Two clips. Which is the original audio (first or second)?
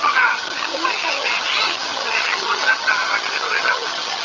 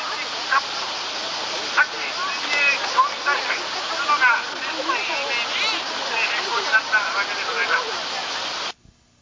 second